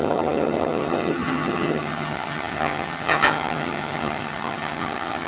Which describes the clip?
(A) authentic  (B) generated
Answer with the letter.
B